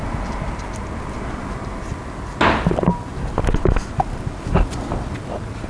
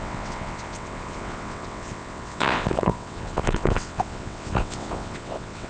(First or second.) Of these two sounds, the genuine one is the first